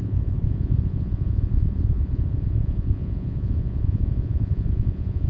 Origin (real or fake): fake